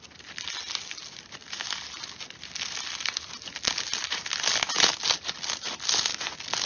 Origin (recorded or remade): recorded